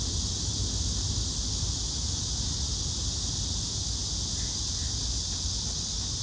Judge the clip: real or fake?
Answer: real